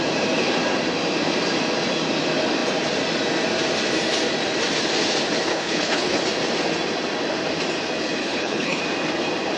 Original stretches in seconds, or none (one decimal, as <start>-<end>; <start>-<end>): 0.0-5.5; 6.2-8.2; 8.8-9.6